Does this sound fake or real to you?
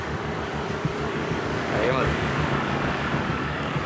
fake